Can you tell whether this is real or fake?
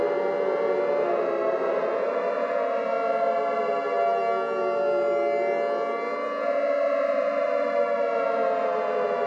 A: real